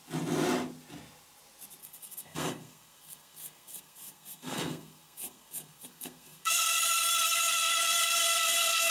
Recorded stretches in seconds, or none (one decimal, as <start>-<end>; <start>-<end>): 0.0-1.8; 6.8-8.0